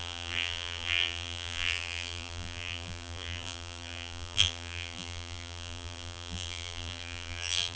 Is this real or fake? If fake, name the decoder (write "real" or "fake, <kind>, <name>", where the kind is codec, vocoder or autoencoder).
fake, vocoder, BigVGAN v2